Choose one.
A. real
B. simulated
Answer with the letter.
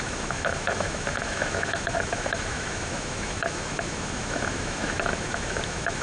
B